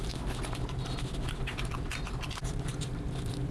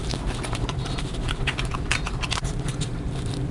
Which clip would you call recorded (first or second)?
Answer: first